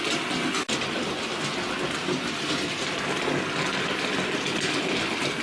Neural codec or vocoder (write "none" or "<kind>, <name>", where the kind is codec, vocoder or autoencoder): none